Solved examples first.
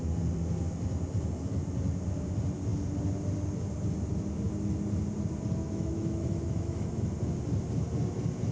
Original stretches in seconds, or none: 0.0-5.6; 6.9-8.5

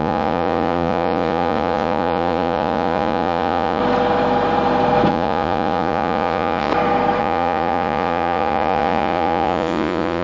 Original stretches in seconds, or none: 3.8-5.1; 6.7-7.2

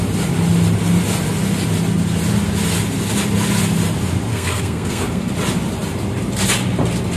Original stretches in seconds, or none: 0.0-4.3; 5.3-7.2